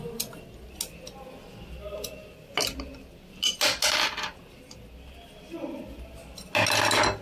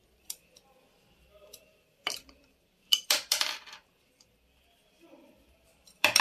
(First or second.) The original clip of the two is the first